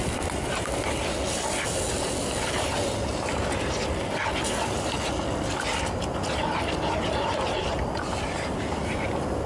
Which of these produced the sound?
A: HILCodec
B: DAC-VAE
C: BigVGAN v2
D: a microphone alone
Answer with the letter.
D